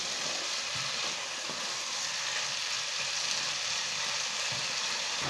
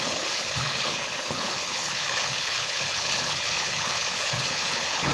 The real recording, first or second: first